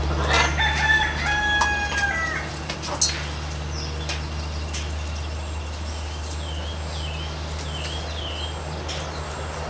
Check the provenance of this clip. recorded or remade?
recorded